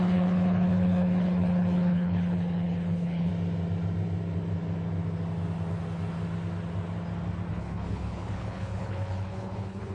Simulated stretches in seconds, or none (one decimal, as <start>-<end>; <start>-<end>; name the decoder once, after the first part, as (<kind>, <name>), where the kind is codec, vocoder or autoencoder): 0.0-3.3 (codec, HILCodec); 7.5-9.9